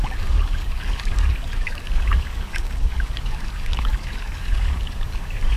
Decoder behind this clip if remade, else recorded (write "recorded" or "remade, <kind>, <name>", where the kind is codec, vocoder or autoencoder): remade, codec, DAC